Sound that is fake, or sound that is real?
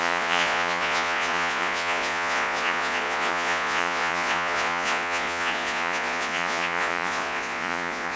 fake